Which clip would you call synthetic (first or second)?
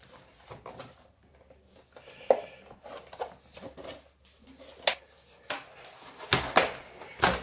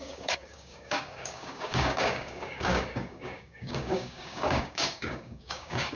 second